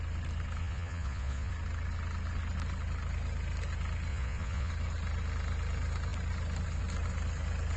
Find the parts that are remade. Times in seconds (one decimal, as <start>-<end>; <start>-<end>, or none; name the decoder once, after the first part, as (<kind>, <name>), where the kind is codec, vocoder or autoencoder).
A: 0.6-1.5 (vocoder, Vocos); 4.1-4.7